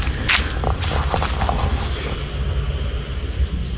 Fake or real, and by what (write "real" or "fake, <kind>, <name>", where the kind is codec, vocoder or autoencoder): real